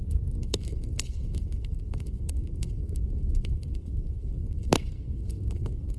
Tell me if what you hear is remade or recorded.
remade